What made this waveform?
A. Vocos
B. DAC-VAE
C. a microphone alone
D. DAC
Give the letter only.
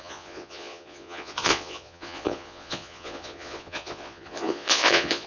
A